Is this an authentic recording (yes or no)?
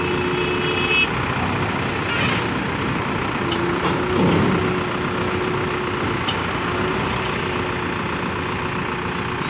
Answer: yes